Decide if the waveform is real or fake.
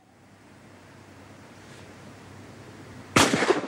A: fake